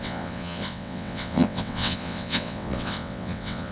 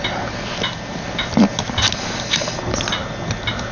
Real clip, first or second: second